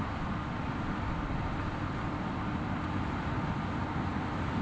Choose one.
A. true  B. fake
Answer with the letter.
A